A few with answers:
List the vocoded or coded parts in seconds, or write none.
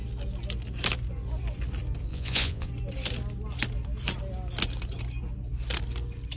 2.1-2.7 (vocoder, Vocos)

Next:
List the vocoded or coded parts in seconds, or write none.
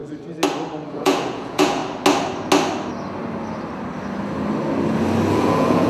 0.9-1.8 (vocoder, Vocos); 5.3-5.9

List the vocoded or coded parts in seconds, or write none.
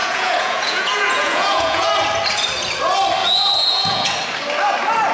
0.0-1.9 (vocoder, Vocos); 3.2-4.1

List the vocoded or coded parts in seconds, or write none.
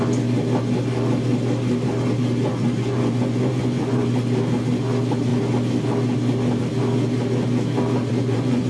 2.5-4.1 (vocoder, Vocos); 8.1-8.7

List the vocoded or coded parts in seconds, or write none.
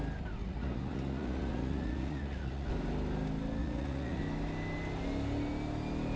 0.4-2.7 (vocoder, Vocos); 3.6-4.2